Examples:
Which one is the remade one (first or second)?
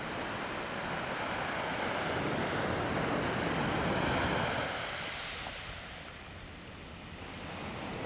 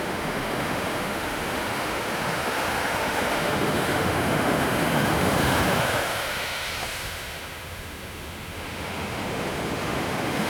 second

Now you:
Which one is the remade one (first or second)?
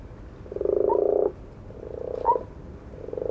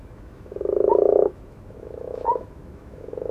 second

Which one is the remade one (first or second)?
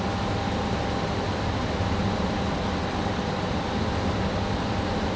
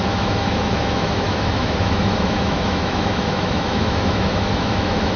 second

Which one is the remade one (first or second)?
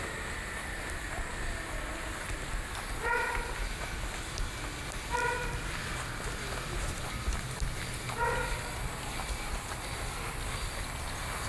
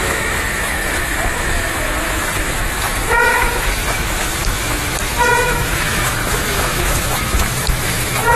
second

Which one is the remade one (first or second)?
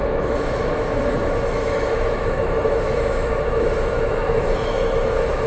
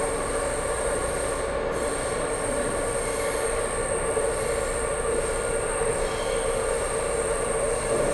first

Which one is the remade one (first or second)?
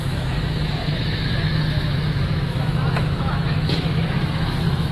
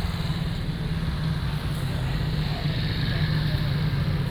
first